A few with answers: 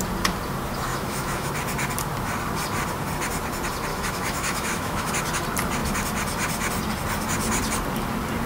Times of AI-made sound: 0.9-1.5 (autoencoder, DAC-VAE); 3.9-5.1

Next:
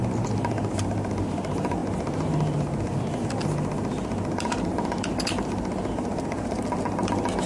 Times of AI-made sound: none

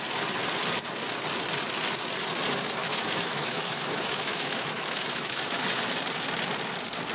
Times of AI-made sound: 2.8-5.6 (autoencoder, DAC-VAE)

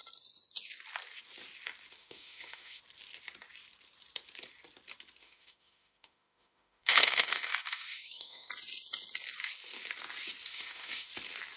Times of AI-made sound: 2.0-2.8 (autoencoder, DAC-VAE); 5.2-8.5; 10.5-11.1

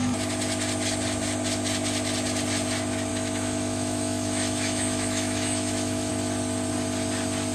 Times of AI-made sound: 3.1-6.1 (autoencoder, DAC-VAE)